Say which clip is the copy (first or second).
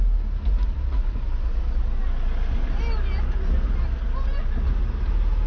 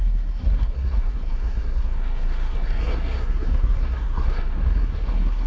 second